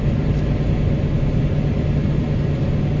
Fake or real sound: real